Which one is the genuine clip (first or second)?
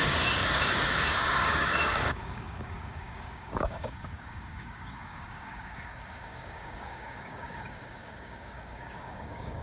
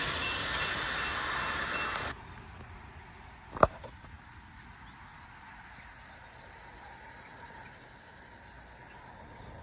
second